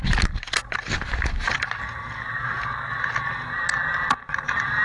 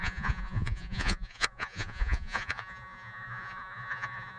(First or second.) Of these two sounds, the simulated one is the second